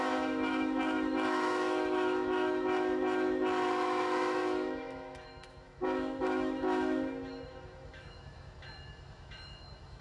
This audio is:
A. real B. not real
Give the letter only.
B